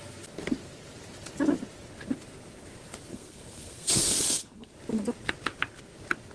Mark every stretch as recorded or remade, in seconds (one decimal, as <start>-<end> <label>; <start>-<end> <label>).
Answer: 0.0-3.1 recorded; 3.1-4.7 remade; 4.7-6.3 recorded